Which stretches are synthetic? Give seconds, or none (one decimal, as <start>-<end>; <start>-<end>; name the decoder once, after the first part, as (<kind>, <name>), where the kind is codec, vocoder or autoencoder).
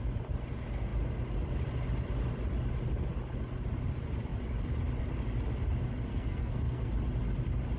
6.1-6.9 (codec, SNAC)